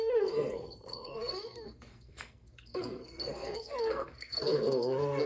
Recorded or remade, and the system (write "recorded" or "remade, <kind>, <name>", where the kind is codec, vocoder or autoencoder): remade, codec, SNAC